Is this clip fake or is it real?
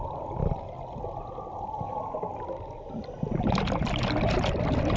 real